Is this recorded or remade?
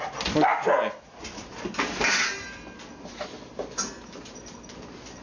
recorded